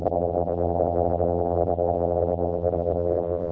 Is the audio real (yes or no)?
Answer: no